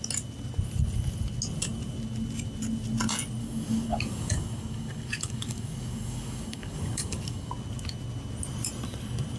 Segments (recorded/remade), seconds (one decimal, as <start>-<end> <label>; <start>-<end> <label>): 0.0-3.4 recorded; 3.4-7.5 remade; 7.5-9.4 recorded